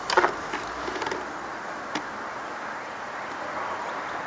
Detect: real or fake real